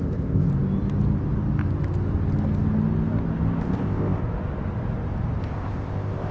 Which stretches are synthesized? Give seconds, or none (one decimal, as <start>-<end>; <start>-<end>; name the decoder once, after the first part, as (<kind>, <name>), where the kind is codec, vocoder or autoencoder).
0.0-0.5 (codec, ZipCodec); 3.6-4.2; 5.4-6.3

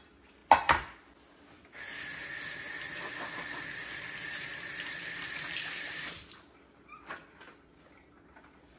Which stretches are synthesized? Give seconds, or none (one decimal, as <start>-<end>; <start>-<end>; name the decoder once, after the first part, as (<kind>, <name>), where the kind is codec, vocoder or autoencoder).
0.0-0.4 (vocoder, BigVGAN v2); 3.3-8.8

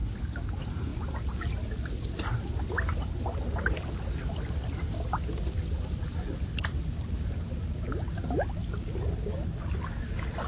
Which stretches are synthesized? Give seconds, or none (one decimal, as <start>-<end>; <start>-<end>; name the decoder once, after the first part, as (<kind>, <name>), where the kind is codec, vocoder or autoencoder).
none

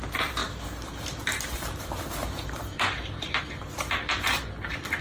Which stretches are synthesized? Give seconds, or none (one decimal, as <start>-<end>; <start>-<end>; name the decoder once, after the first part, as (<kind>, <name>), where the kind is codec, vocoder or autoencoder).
0.4-3.4 (vocoder, BigVGAN v2)